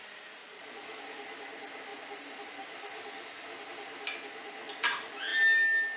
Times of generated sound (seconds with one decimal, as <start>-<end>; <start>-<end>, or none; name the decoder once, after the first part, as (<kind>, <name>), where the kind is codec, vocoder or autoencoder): 0.4-1.0 (vocoder, Vocos)